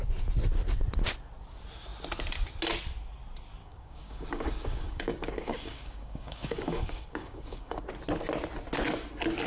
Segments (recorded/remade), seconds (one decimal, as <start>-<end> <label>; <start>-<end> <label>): 0.0-3.6 recorded; 3.6-7.8 remade; 7.8-9.5 recorded